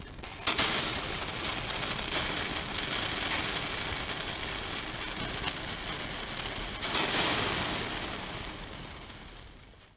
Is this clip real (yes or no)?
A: yes